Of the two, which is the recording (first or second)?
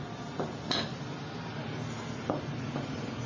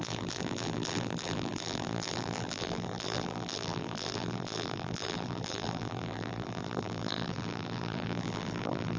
first